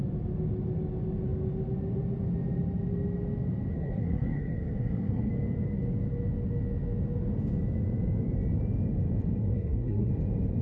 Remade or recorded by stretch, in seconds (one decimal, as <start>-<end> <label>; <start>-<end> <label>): 0.0-3.7 recorded; 3.7-5.3 remade; 5.3-9.4 recorded; 9.4-10.1 remade; 10.1-10.6 recorded